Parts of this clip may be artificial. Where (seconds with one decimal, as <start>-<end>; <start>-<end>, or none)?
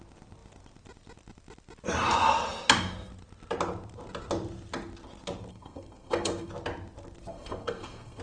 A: 5.5-6.5; 7.3-8.2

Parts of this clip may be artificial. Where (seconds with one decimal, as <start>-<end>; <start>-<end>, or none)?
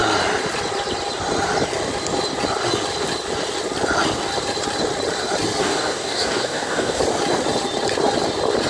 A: 5.6-7.0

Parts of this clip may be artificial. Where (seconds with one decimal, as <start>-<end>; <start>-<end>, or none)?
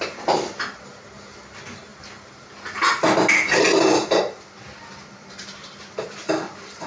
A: none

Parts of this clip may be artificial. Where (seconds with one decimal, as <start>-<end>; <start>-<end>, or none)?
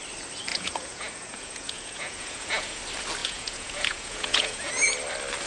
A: 0.5-2.8; 3.2-4.7